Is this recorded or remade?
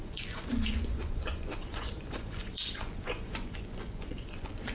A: remade